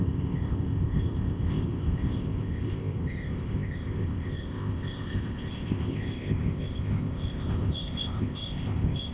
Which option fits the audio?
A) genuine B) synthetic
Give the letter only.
B